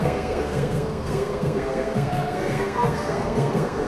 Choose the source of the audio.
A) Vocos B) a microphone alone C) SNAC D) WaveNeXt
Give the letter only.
C